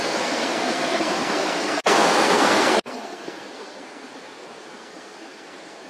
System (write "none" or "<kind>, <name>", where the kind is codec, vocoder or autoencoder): codec, SNAC